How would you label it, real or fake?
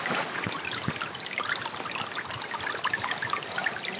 real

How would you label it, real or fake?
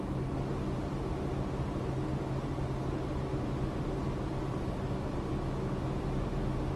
real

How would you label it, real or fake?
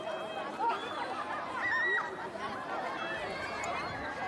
real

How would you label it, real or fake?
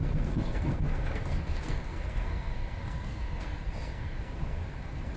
fake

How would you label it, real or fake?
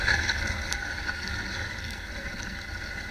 fake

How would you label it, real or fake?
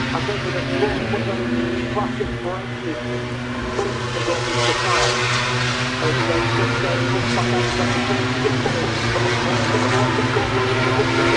real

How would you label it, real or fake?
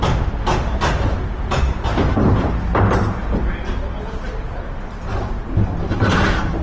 real